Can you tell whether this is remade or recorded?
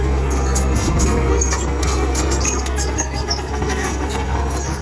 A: remade